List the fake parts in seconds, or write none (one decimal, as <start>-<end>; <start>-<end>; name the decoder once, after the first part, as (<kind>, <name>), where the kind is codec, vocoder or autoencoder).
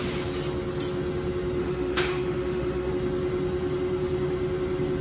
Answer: 1.6-2.9 (autoencoder, DAC-VAE)